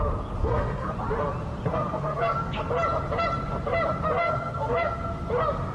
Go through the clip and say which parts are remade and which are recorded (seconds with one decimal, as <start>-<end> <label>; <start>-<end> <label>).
0.0-0.4 recorded; 0.4-0.9 remade; 0.9-1.7 recorded; 1.7-2.6 remade; 2.6-4.2 recorded; 4.2-5.0 remade; 5.0-5.7 recorded